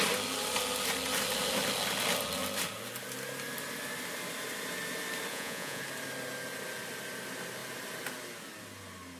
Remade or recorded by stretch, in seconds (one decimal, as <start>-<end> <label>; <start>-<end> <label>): 0.0-5.3 recorded; 5.3-5.8 remade; 5.8-9.2 recorded